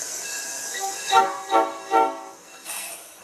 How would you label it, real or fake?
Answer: fake